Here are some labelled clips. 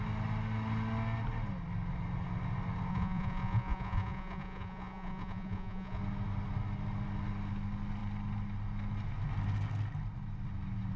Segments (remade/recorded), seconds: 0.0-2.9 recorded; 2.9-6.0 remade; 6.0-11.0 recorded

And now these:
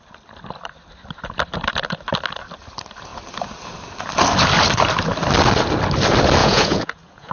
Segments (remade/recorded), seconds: 0.0-6.4 recorded; 6.4-7.3 remade

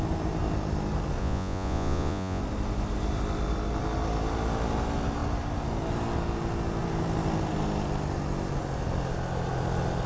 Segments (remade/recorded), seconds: 0.0-1.2 recorded; 1.2-2.4 remade; 2.4-10.1 recorded

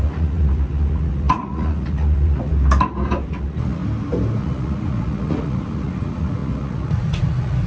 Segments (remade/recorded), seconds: 0.0-2.5 remade; 2.5-3.3 recorded; 3.3-3.8 remade; 3.8-4.4 recorded; 4.4-7.7 remade

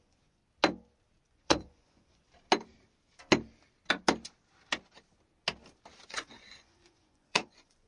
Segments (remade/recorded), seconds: 0.0-0.4 remade; 0.4-1.3 recorded; 1.3-2.2 remade; 2.2-6.1 recorded; 6.1-7.9 remade

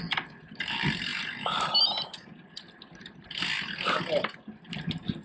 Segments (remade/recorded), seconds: 0.0-5.2 recorded

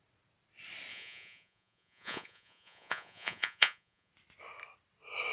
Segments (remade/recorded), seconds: 0.0-0.9 recorded; 0.9-4.1 remade; 4.1-5.3 recorded